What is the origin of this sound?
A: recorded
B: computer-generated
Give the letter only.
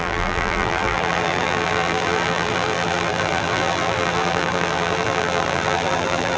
B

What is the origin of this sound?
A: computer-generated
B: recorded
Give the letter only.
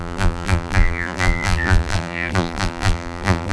A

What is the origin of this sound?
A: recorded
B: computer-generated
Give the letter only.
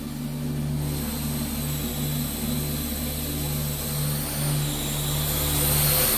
A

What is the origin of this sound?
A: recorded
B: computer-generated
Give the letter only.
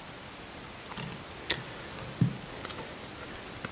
A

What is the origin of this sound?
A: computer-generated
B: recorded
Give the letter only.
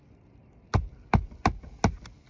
B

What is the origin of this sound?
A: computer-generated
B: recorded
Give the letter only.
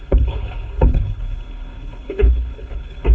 A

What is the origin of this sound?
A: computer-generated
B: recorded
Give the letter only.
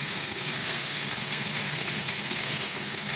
A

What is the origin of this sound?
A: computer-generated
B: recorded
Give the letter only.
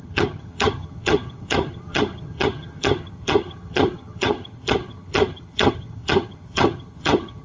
A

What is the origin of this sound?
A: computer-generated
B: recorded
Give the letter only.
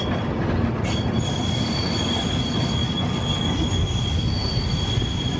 B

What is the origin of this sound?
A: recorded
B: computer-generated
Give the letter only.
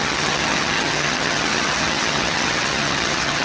B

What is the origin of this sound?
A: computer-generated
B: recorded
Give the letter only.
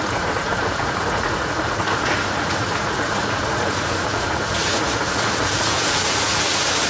A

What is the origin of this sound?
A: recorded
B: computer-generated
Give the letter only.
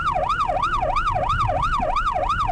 A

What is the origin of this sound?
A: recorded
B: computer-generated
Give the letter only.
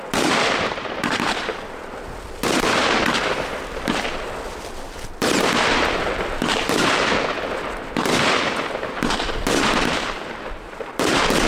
A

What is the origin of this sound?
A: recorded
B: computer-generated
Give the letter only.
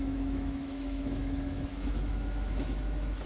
B